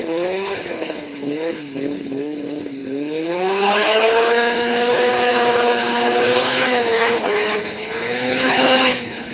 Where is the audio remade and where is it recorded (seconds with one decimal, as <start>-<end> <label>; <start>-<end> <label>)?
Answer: 0.0-9.3 remade